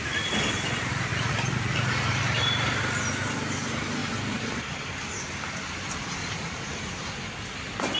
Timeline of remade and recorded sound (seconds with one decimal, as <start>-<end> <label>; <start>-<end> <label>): 0.0-1.1 recorded; 1.1-2.2 remade; 2.2-6.2 recorded; 6.2-6.8 remade; 6.8-8.0 recorded